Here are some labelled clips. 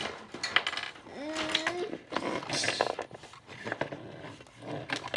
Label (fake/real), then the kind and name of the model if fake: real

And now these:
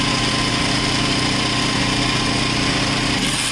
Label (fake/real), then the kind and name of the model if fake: real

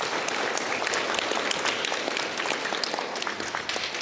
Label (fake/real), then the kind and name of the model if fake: real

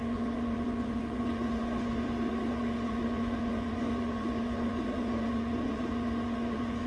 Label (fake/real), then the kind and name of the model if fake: fake, vocoder, Vocos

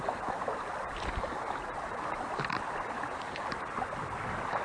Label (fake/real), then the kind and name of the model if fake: real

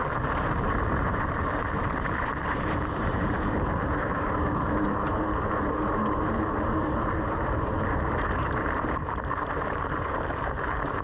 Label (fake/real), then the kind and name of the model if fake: fake, vocoder, BigVGAN v2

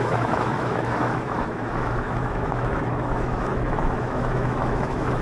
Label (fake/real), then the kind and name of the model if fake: fake, autoencoder, DAC-VAE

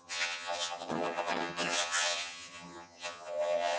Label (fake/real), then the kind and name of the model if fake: fake, vocoder, HiFi-GAN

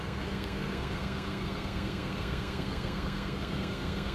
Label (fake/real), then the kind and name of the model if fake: fake, codec, SNAC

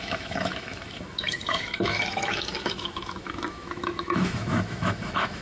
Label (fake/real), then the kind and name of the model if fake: fake, autoencoder, DAC-VAE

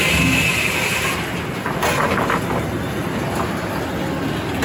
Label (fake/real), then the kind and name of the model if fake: real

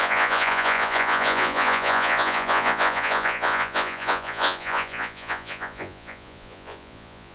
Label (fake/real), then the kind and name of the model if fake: fake, vocoder, Vocos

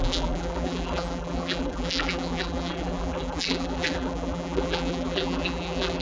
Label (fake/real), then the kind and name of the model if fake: fake, vocoder, BigVGAN v2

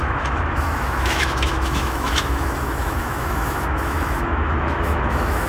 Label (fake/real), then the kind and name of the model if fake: fake, autoencoder, DAC-VAE